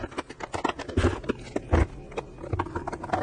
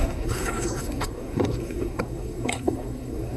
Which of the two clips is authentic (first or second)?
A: first